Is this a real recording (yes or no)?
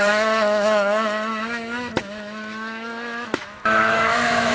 no